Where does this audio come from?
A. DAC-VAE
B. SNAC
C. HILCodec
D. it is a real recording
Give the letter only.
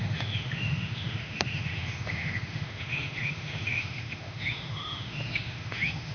A